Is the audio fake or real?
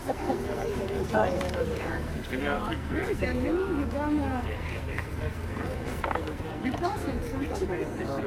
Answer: fake